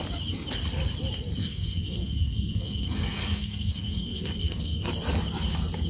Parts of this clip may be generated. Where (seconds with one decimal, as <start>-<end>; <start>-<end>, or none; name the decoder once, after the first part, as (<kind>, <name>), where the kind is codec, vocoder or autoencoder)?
1.4-4.9 (codec, SNAC)